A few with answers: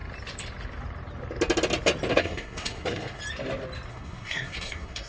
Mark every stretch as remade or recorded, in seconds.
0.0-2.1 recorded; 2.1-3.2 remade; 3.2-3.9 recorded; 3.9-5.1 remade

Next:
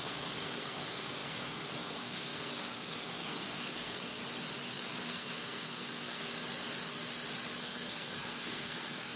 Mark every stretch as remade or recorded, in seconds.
0.0-4.2 remade; 4.2-4.7 recorded; 4.7-6.3 remade; 6.3-7.6 recorded; 7.6-9.2 remade